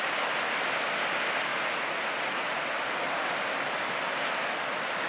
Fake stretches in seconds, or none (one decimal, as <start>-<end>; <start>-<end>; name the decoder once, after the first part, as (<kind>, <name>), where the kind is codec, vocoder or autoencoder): 1.5-2.7 (vocoder, Vocos)

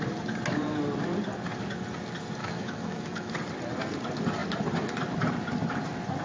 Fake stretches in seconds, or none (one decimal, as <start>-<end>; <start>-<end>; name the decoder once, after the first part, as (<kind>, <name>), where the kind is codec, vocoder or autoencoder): 2.4-3.3 (autoencoder, DAC-VAE)

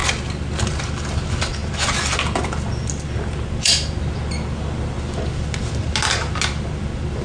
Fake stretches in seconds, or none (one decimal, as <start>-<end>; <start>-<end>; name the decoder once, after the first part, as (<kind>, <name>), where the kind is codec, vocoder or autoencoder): none

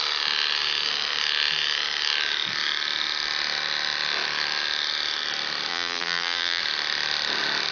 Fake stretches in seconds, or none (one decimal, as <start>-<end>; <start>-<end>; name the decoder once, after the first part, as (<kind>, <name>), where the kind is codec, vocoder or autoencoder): 5.7-6.6 (vocoder, BigVGAN v2)

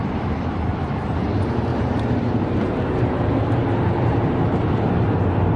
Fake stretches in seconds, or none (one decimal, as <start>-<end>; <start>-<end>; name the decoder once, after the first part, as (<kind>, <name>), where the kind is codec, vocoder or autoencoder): 1.7-4.7 (vocoder, BigVGAN v2)

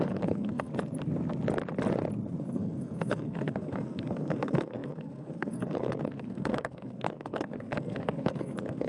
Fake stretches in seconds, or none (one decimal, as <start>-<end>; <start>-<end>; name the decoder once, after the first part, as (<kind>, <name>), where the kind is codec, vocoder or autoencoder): 0.0-0.7 (codec, SNAC); 2.4-8.9